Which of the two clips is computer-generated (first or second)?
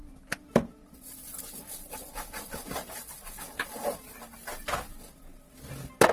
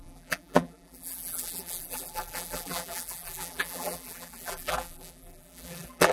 second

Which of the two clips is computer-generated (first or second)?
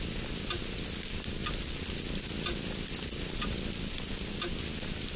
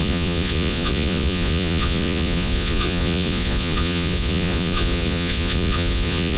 second